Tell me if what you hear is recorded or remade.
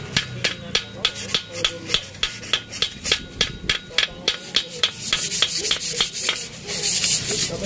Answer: recorded